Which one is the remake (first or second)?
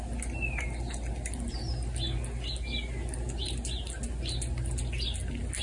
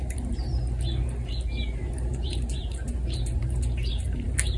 second